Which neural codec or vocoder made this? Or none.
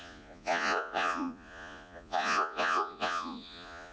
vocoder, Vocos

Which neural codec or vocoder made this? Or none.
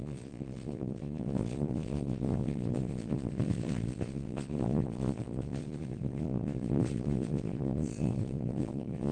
vocoder, Vocos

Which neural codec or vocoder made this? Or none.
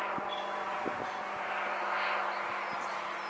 none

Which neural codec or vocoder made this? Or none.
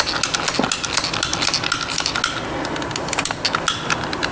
none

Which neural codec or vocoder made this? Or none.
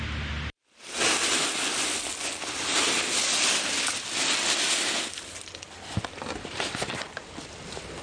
none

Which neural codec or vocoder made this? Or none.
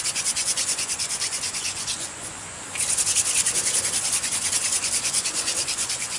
vocoder, Vocos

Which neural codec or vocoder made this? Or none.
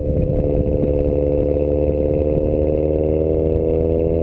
none